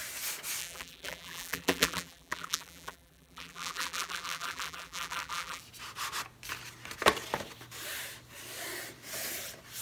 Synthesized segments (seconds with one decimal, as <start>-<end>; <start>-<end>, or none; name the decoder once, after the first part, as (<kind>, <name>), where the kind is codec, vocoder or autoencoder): 0.6-5.6 (vocoder, BigVGAN v2)